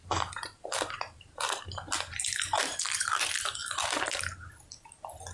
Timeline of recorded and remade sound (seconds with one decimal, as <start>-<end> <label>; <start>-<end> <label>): 0.0-3.2 remade; 3.2-5.3 recorded